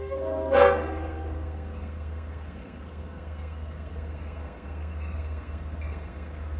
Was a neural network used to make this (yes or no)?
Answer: yes